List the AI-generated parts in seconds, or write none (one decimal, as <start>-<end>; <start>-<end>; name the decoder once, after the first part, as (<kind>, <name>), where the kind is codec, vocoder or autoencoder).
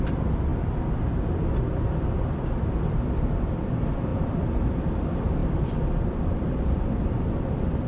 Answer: 0.0-0.5 (vocoder, BigVGAN v2); 2.6-7.9